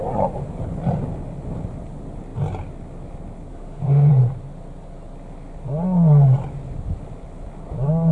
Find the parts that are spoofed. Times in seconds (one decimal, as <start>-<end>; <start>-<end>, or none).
3.5-4.1